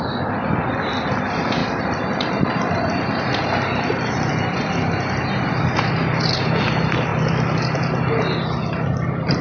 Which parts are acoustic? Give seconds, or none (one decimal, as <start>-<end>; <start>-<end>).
0.0-1.6; 5.6-9.4